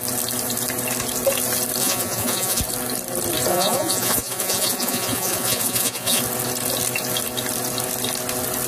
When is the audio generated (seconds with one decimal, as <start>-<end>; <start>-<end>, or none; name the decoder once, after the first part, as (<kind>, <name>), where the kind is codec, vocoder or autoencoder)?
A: 1.8-2.6 (vocoder, Vocos); 3.5-6.2